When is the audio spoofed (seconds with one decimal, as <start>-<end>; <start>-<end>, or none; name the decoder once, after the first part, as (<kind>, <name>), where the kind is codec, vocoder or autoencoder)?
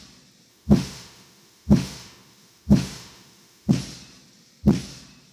0.5-3.7 (autoencoder, DAC-VAE)